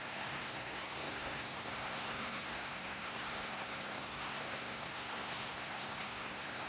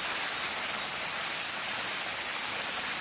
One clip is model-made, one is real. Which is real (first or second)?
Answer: second